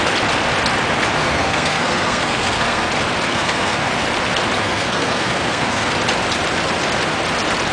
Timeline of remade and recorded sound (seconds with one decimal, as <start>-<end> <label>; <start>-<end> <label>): 0.0-1.2 recorded; 1.2-2.9 remade; 2.9-3.3 recorded; 3.3-3.9 remade; 3.9-4.6 recorded; 4.6-5.9 remade; 5.9-7.7 recorded